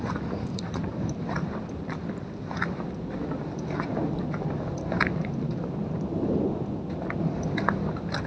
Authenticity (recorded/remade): recorded